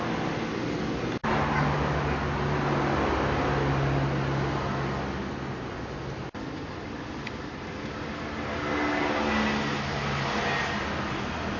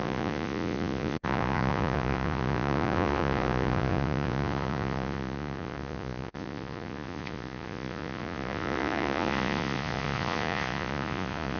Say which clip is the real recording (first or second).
first